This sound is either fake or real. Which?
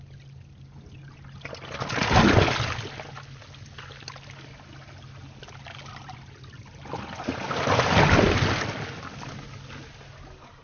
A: real